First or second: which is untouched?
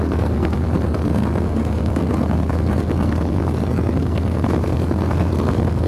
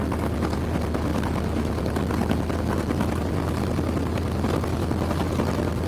second